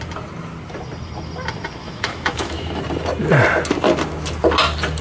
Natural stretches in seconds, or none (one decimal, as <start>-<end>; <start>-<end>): 0.0-1.8; 2.8-5.0